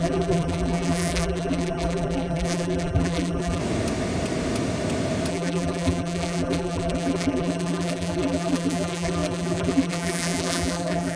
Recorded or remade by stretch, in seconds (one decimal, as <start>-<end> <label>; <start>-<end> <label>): 0.0-3.6 remade; 3.6-5.3 recorded; 5.3-11.2 remade